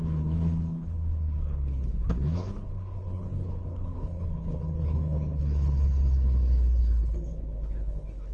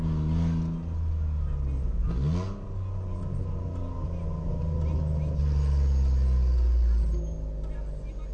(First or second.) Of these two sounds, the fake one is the first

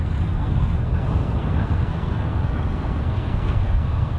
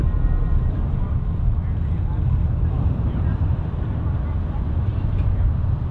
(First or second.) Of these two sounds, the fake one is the first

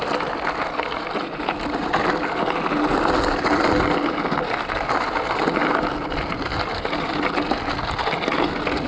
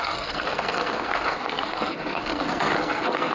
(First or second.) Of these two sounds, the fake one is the second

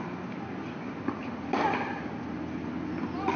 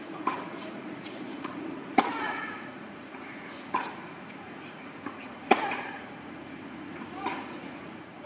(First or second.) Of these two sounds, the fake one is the second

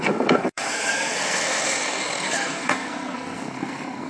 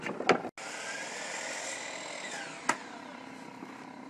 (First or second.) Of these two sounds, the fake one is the first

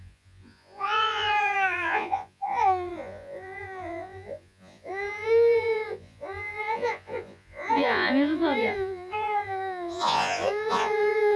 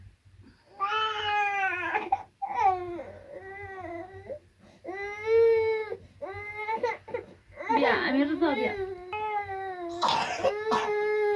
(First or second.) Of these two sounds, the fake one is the first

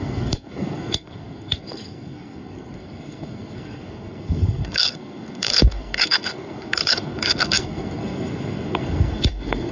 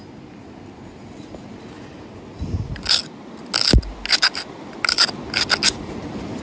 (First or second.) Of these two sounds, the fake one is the first